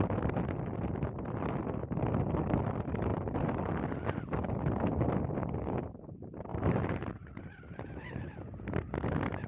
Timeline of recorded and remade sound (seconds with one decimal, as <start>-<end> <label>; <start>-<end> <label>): 0.0-6.5 recorded; 6.5-8.0 remade; 8.0-9.5 recorded